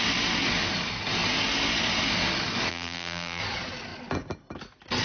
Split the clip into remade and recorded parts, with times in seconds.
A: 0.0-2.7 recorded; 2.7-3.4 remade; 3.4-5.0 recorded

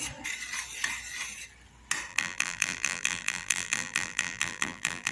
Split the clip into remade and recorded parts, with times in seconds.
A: 0.0-2.1 recorded; 2.1-5.1 remade

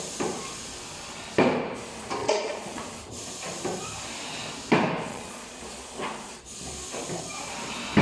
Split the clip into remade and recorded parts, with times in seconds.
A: 0.0-2.2 recorded; 2.2-2.8 remade; 2.8-5.1 recorded; 5.1-5.6 remade; 5.6-8.0 recorded

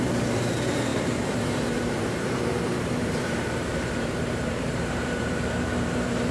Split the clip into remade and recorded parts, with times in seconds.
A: 0.0-6.3 remade

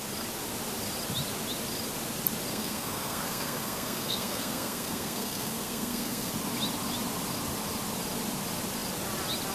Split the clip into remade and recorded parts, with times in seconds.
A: 0.0-2.5 recorded; 2.5-6.3 remade; 6.3-9.5 recorded

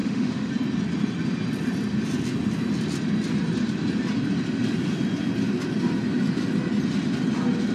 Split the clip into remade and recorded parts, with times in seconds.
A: 0.0-0.5 remade; 0.5-7.7 recorded

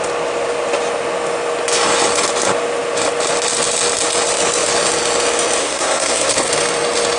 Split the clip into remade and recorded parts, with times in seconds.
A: 0.0-5.6 recorded; 5.6-6.5 remade; 6.5-7.2 recorded

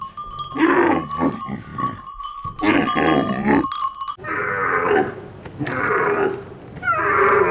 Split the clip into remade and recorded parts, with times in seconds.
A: 0.0-7.5 recorded